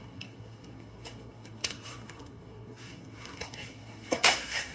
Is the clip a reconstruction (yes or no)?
yes